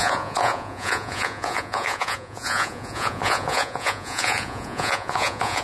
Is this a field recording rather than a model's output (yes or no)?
no